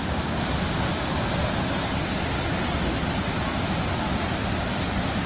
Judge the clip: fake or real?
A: real